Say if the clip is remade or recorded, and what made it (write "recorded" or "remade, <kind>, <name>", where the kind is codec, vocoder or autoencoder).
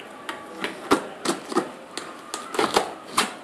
recorded